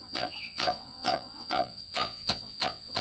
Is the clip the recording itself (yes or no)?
no